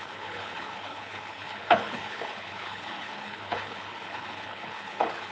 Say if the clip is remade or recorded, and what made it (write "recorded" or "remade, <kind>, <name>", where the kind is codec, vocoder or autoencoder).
remade, codec, HILCodec